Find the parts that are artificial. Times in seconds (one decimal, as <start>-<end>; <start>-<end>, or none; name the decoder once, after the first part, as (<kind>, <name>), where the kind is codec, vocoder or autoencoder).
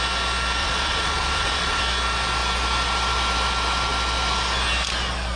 0.6-1.8 (vocoder, Vocos)